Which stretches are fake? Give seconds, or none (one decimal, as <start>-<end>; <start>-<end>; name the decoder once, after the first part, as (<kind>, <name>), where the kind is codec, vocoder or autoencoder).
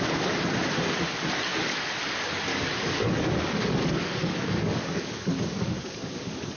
2.5-6.6 (codec, DAC)